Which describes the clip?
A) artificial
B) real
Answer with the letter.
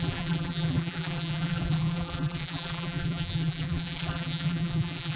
A